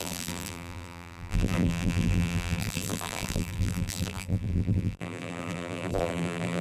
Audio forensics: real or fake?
fake